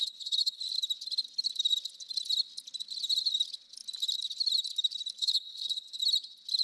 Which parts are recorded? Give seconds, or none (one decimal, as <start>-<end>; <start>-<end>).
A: 0.6-5.2; 6.0-6.6